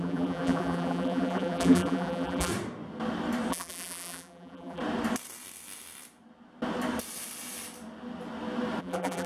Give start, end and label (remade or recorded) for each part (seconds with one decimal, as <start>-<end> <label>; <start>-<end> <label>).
0.0-2.5 remade; 2.5-3.5 recorded; 3.5-4.8 remade; 4.8-8.8 recorded; 8.8-9.3 remade